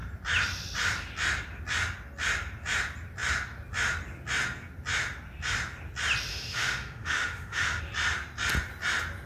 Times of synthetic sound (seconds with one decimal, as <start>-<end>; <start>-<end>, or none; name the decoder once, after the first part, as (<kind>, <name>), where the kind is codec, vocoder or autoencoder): 6.3-7.8 (autoencoder, DAC-VAE)

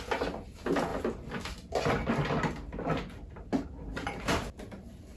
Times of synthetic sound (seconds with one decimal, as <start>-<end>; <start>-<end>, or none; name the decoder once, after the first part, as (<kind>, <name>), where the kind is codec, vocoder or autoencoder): none

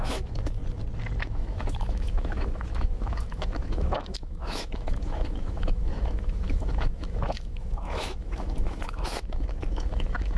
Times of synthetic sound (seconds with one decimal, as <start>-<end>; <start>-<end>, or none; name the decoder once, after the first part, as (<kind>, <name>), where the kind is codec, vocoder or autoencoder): 0.0-0.6 (autoencoder, DAC-VAE); 1.2-10.4

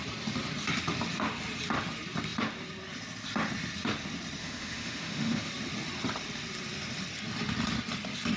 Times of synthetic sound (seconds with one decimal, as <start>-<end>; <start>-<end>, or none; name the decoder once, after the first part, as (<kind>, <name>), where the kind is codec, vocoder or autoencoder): 4.4-5.5 (autoencoder, DAC-VAE)

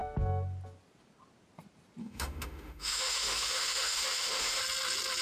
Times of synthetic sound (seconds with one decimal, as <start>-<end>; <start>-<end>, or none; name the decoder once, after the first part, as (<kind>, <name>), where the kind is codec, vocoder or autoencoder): 2.0-4.6 (autoencoder, DAC-VAE)

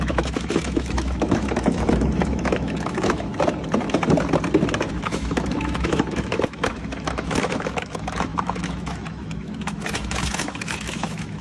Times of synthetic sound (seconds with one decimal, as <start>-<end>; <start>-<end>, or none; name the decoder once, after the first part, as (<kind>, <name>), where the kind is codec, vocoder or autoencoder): 0.0-3.3 (autoencoder, DAC-VAE); 4.9-11.4

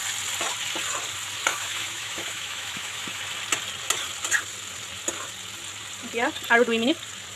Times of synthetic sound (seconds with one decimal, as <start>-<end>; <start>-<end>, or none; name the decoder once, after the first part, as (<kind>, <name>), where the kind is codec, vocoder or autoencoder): 1.5-3.2 (autoencoder, DAC-VAE)

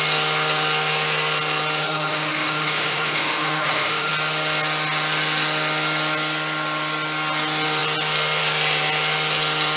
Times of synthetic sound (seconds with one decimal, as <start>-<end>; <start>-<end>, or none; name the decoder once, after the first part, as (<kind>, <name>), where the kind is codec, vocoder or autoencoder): 1.8-4.1 (autoencoder, DAC-VAE)